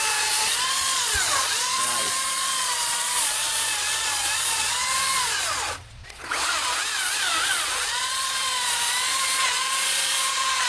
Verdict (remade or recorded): remade